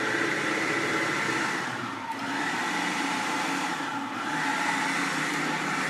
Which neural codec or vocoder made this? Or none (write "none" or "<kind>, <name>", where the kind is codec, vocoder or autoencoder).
none